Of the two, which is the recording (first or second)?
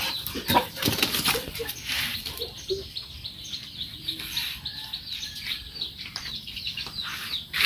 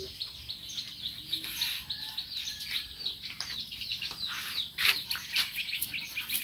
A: second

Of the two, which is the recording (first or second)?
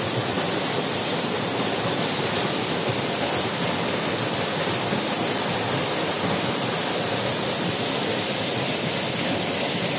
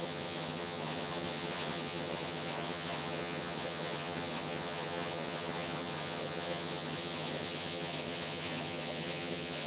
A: first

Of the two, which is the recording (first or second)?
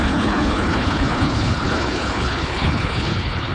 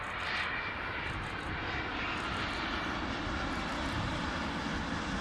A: second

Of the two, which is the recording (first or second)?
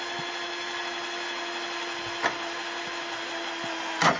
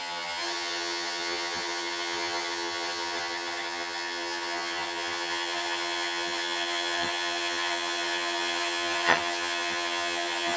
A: first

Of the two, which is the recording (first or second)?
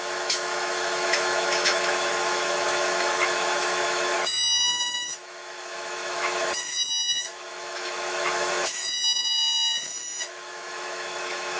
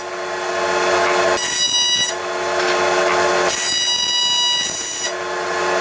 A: second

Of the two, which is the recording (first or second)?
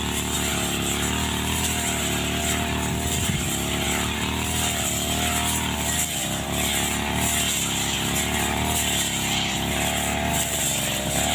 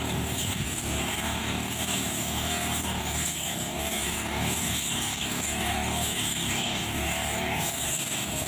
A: first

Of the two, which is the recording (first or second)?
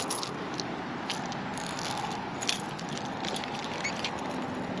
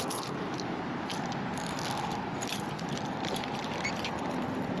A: first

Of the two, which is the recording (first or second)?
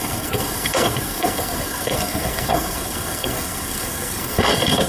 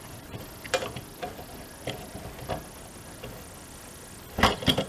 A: second